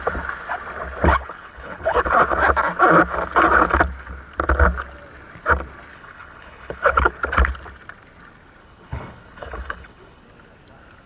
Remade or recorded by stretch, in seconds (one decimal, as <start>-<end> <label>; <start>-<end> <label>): 0.0-1.1 recorded; 1.1-2.0 remade; 2.0-5.9 recorded; 5.9-7.1 remade; 7.1-8.6 recorded; 8.6-10.2 remade; 10.2-11.1 recorded